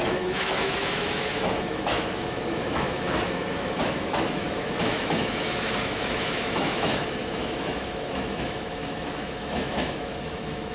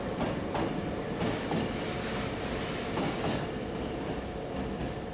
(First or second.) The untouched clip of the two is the second